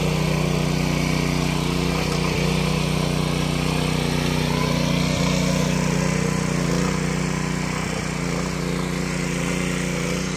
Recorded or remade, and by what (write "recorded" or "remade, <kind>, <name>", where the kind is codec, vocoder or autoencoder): recorded